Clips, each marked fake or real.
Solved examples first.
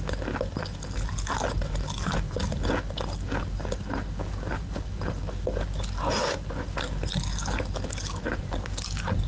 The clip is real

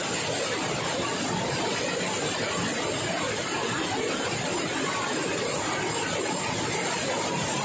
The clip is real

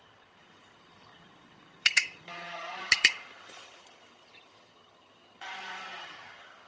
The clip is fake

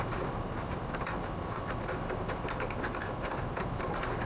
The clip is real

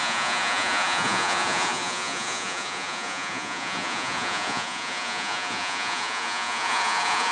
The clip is fake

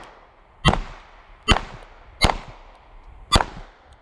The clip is real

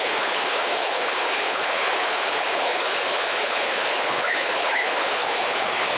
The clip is fake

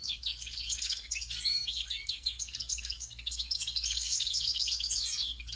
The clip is fake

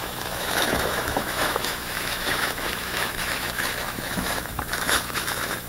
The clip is fake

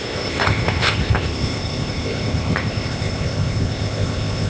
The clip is fake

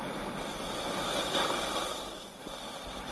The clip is real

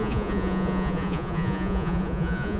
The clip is fake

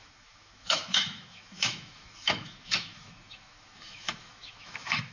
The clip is fake